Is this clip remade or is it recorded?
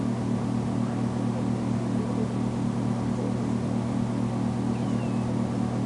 recorded